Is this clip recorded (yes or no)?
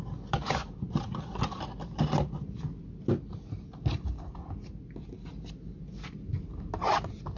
yes